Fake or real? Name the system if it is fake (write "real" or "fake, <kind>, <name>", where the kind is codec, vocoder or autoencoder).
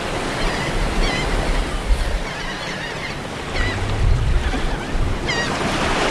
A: real